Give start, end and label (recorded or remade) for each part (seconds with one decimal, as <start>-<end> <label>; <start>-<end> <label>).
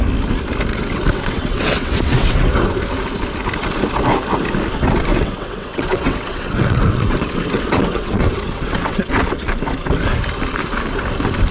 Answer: 0.0-0.7 recorded; 0.7-2.5 remade; 2.5-5.1 recorded; 5.1-9.1 remade; 9.1-11.5 recorded